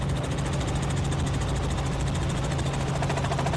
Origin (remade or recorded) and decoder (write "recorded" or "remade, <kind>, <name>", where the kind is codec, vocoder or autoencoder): recorded